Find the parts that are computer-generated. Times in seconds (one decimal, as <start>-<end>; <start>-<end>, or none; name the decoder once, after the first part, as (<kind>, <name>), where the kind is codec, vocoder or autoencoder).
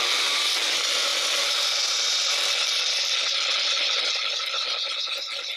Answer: none